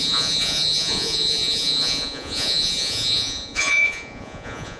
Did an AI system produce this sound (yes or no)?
yes